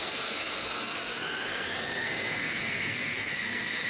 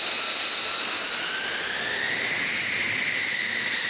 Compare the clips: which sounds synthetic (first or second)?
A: first